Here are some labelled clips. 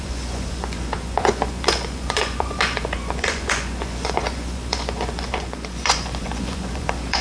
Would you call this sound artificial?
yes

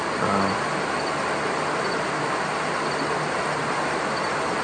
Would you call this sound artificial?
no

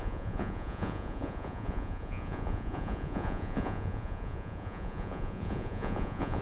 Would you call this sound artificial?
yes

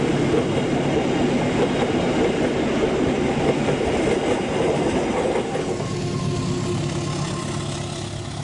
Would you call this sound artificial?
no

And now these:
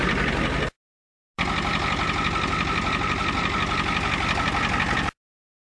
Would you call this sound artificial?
no